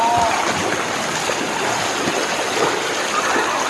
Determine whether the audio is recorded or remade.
recorded